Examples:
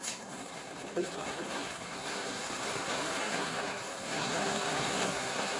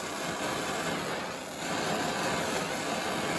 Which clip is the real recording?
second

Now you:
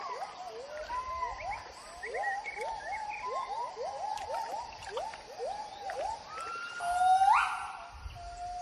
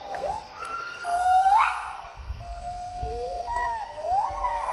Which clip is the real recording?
first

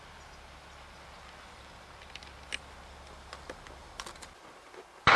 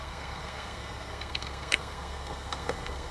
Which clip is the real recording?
first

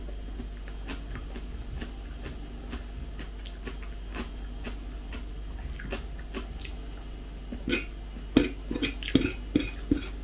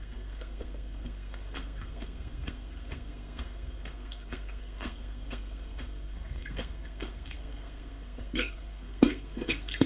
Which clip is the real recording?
first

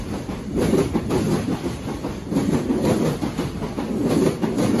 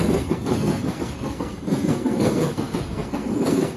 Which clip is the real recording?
first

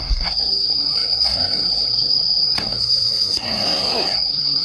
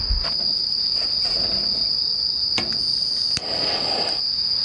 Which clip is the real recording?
second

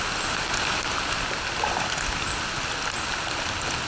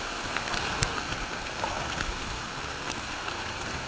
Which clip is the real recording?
first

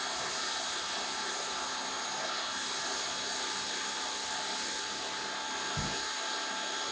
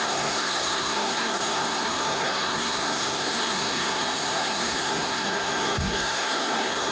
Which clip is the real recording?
first